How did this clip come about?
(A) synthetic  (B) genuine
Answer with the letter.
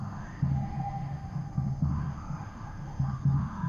A